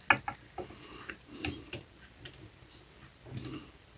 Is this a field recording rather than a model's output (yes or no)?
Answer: yes